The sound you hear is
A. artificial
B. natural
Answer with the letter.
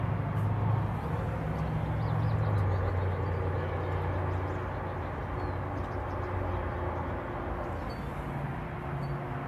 B